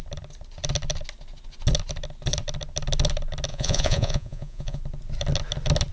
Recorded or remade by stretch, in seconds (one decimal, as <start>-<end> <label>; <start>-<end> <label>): 0.0-3.5 recorded; 3.5-4.8 remade; 4.8-5.9 recorded